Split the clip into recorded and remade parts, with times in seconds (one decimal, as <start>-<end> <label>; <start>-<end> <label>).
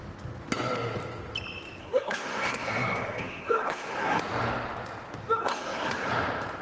0.0-1.8 recorded; 1.8-4.2 remade; 4.2-5.4 recorded; 5.4-6.1 remade; 6.1-6.6 recorded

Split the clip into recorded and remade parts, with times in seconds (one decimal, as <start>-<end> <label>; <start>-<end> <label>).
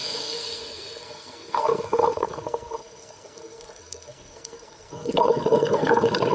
0.0-6.3 remade